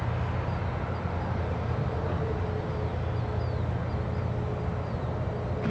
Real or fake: real